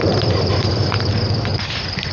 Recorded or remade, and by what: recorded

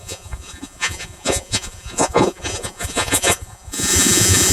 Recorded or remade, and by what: remade, vocoder, Vocos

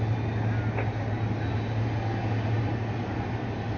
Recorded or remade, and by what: recorded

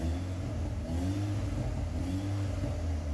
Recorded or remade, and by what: recorded